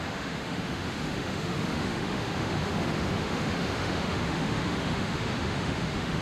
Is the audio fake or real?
fake